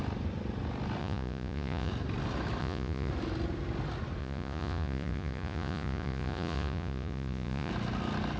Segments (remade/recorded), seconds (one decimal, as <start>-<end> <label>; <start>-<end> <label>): 0.0-1.0 recorded; 1.0-1.9 remade; 1.9-2.6 recorded; 2.6-3.1 remade; 3.1-4.2 recorded; 4.2-7.7 remade; 7.7-8.4 recorded